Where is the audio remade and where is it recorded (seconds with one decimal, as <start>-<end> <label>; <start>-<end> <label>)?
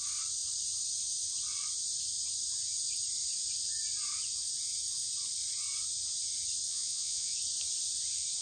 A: 0.0-6.7 recorded; 6.7-7.3 remade; 7.3-8.4 recorded